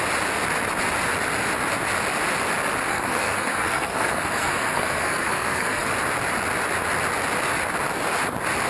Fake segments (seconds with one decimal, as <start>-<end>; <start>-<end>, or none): 2.9-5.9